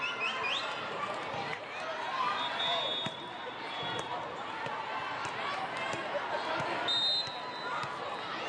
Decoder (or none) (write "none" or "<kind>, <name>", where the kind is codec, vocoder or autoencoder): none